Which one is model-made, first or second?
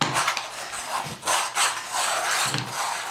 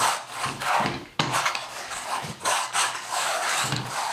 second